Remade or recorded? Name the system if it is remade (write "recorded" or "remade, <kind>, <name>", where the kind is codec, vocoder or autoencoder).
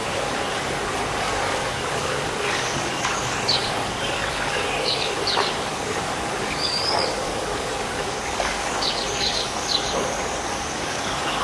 remade, codec, DAC